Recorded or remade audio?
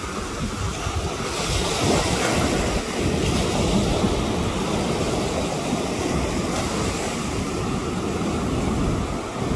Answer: recorded